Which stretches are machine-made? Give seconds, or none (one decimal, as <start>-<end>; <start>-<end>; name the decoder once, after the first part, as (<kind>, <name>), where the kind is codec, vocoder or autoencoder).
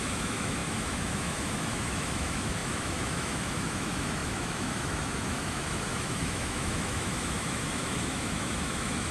0.0-9.1 (autoencoder, DAC-VAE)